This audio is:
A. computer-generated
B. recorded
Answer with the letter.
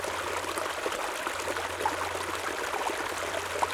B